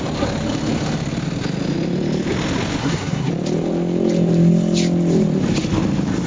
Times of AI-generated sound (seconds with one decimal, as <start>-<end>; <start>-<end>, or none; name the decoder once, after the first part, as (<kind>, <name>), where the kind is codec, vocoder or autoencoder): 2.8-3.3 (codec, SNAC)